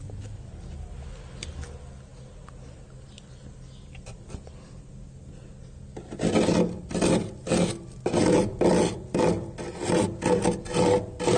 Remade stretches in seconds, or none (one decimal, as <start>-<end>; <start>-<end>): none